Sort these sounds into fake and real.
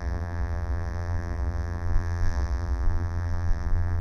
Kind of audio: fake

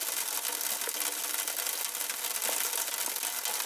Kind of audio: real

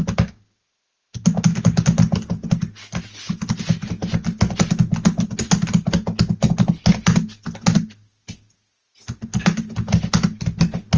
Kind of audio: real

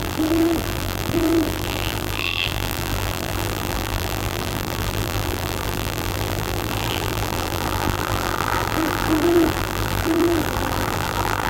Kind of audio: fake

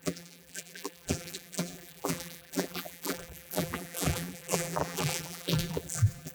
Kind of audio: fake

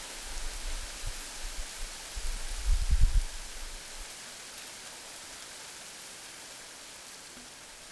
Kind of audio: real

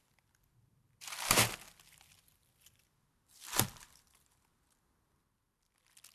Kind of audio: real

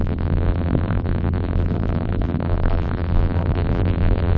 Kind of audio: fake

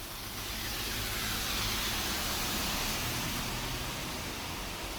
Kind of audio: real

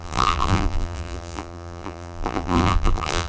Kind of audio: fake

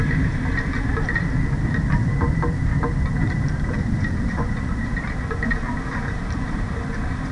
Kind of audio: fake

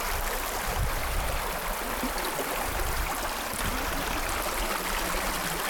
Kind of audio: real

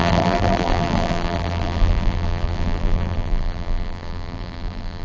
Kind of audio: fake